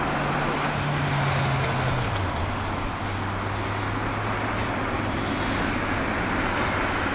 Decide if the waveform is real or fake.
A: real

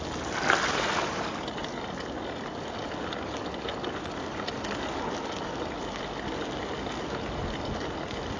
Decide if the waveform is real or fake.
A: real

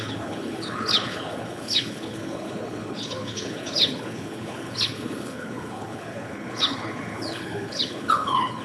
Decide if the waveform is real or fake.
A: fake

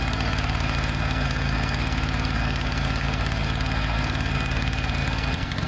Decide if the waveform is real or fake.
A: fake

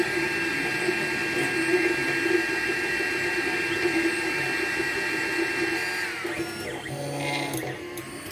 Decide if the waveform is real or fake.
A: real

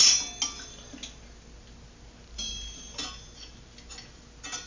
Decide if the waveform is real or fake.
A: real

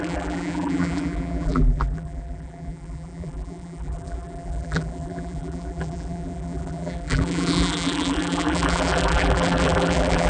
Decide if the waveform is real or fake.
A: fake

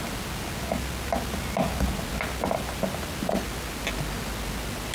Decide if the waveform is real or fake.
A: real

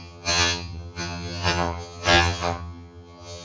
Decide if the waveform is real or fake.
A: fake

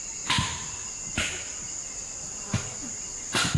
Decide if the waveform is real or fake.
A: real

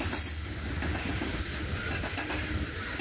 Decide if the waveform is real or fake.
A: real